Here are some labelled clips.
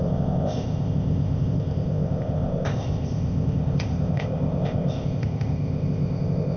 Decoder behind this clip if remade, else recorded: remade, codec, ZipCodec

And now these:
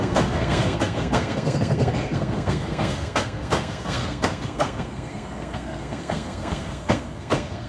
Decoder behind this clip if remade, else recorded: remade, codec, SNAC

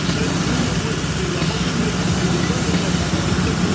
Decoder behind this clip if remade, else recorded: recorded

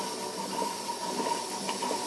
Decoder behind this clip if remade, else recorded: recorded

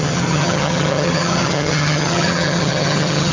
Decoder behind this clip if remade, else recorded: remade, vocoder, HiFi-GAN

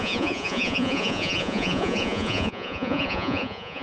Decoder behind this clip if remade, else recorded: remade, vocoder, Vocos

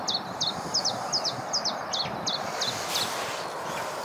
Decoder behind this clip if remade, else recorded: recorded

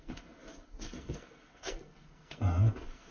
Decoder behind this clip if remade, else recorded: remade, codec, SNAC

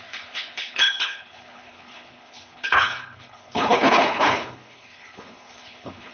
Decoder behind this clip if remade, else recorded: remade, codec, HILCodec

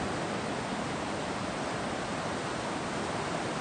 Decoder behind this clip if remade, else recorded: recorded